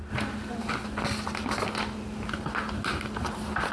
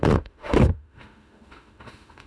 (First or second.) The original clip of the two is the first